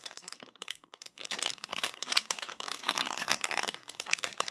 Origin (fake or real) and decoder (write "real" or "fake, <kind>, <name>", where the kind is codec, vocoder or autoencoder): fake, codec, SNAC